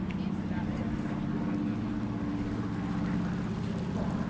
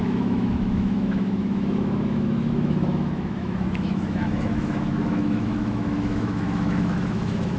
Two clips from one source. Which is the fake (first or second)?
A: second